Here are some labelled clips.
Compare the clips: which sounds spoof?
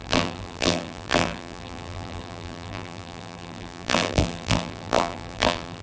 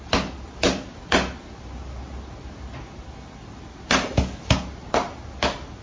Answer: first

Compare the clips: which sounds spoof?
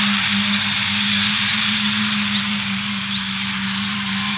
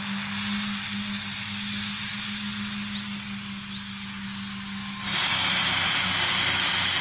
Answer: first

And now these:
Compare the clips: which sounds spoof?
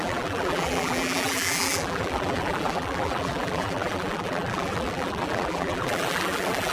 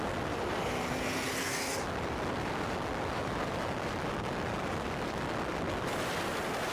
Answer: first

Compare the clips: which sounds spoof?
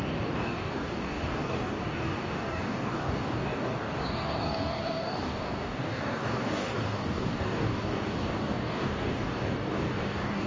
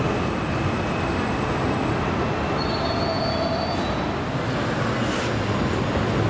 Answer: first